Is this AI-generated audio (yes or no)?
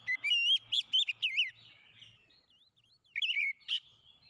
no